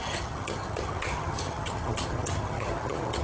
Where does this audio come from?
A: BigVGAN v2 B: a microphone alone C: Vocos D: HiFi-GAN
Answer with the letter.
D